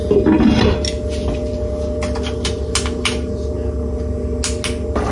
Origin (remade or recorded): recorded